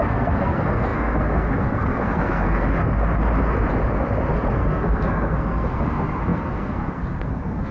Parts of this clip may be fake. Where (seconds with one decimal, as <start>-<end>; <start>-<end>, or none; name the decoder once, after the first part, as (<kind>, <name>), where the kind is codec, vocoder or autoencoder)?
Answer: 0.0-2.8 (codec, SNAC); 4.5-7.7